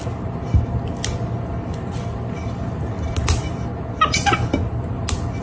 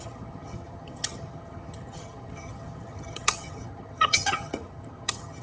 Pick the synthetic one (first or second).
second